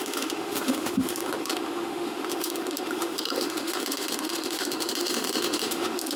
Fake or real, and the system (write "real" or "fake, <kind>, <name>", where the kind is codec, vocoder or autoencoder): fake, autoencoder, DAC-VAE